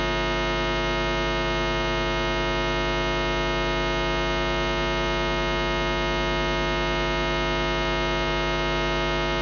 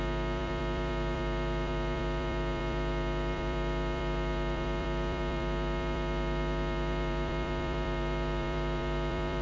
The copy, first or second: second